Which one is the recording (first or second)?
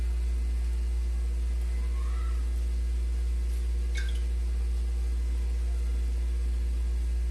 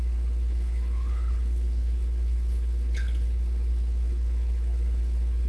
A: first